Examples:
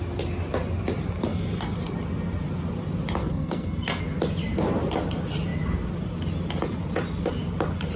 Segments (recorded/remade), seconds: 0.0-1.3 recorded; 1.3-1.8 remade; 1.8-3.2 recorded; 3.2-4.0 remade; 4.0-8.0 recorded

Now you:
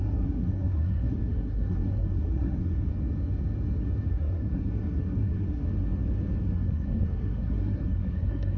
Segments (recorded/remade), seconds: 0.0-2.9 remade; 2.9-4.1 recorded; 4.1-5.6 remade; 5.6-6.4 recorded; 6.4-8.6 remade

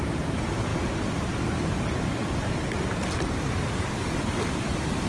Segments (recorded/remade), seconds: 0.0-5.1 recorded